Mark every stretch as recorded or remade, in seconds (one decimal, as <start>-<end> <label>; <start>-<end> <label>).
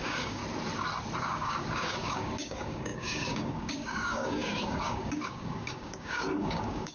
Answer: 0.0-0.4 remade; 0.4-1.2 recorded; 1.2-6.9 remade